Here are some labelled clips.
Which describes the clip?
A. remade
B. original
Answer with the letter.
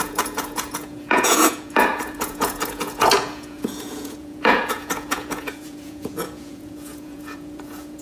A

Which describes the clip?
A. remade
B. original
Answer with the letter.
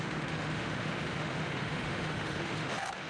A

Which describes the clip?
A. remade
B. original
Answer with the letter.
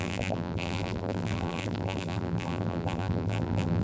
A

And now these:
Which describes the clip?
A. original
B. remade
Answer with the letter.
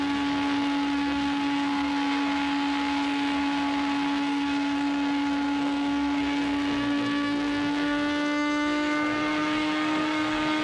B